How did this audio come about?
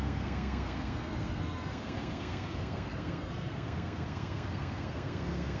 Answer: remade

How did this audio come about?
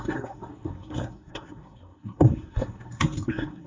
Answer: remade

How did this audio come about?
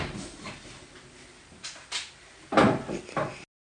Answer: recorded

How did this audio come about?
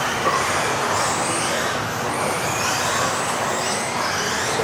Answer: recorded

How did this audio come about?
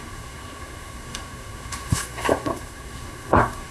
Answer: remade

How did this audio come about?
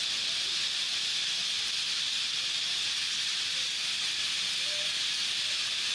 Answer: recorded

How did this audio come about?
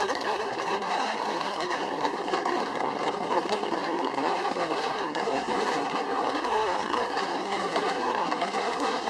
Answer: remade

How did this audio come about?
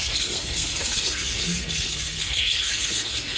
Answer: remade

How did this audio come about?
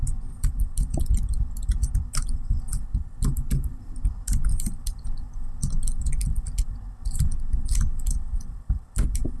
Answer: recorded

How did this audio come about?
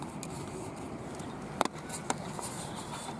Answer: recorded